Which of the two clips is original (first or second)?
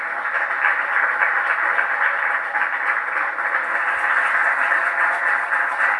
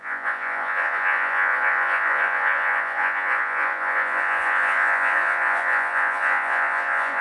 first